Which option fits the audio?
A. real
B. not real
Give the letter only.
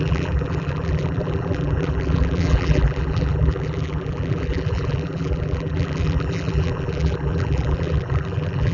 B